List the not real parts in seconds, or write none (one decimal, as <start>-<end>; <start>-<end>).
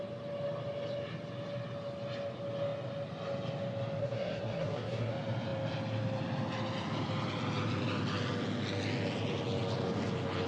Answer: 4.0-5.1